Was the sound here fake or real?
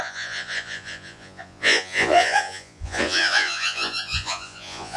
fake